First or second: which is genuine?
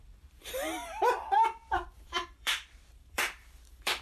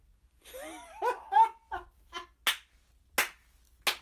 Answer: second